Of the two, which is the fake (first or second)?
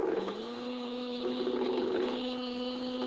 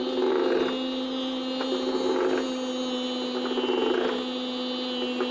first